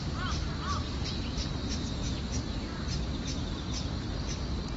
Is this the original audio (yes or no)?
yes